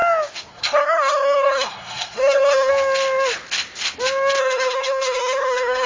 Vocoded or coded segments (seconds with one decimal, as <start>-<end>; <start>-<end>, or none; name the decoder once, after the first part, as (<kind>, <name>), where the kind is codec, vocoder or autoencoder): 0.5-2.7 (codec, SNAC); 4.4-5.9